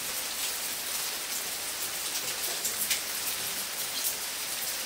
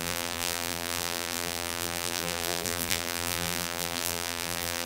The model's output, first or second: second